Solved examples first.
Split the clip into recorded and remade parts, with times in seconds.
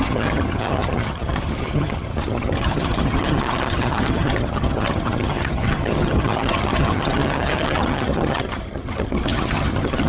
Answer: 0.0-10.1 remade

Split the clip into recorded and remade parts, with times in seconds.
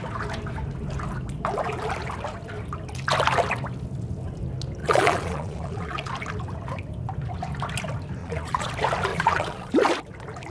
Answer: 0.0-4.8 recorded; 4.8-6.1 remade; 6.1-8.2 recorded; 8.2-8.7 remade; 8.7-9.1 recorded; 9.1-9.7 remade; 9.7-10.5 recorded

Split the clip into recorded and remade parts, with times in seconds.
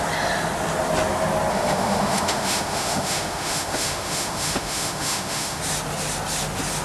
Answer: 0.0-1.5 recorded; 1.5-5.6 remade; 5.6-6.8 recorded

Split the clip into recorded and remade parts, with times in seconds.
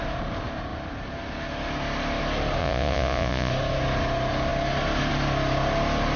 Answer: 0.0-2.6 recorded; 2.6-3.5 remade; 3.5-6.2 recorded